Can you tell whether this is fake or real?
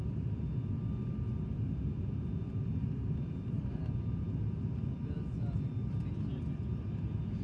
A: real